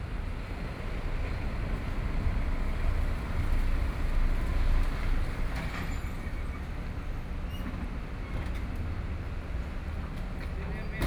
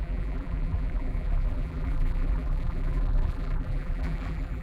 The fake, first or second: second